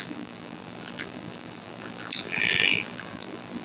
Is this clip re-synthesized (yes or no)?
yes